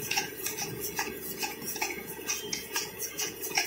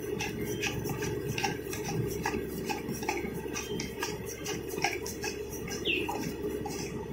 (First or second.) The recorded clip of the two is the second